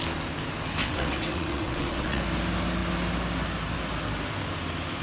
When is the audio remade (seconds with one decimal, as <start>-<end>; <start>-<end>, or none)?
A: 0.8-2.2